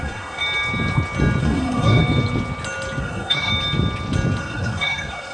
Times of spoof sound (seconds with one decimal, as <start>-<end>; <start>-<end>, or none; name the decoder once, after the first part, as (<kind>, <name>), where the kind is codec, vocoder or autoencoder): 0.0-0.4 (codec, SNAC); 1.4-2.0; 3.0-3.5; 4.4-5.3